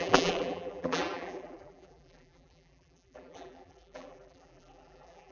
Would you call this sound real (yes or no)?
no